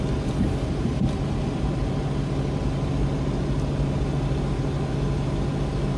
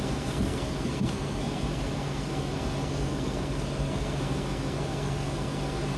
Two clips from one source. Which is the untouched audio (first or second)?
first